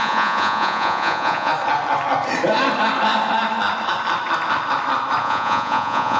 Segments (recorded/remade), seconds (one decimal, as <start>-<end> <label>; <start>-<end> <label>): 0.0-1.5 remade; 1.5-5.2 recorded; 5.2-6.2 remade